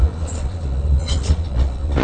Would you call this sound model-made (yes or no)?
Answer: yes